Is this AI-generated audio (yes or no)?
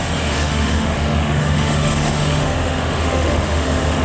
yes